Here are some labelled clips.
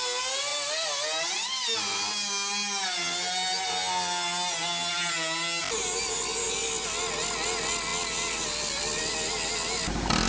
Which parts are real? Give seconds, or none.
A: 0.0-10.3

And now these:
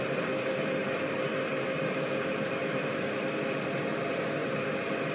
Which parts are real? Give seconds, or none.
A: 0.0-5.1

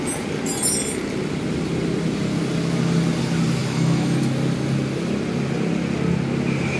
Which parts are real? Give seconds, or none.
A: 0.0-3.6; 4.2-6.8

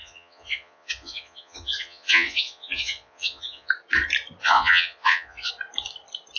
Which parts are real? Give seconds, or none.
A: 3.7-4.4; 5.5-6.4

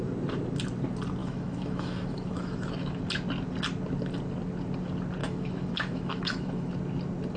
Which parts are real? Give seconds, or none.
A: 0.0-1.2; 3.0-5.2; 6.7-7.4

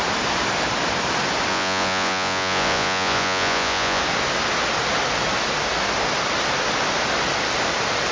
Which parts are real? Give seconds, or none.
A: 0.0-1.5; 4.0-8.1